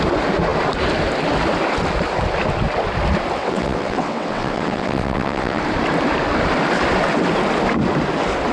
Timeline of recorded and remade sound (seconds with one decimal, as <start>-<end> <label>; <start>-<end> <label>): 0.0-3.4 recorded; 3.4-5.6 remade; 5.6-8.5 recorded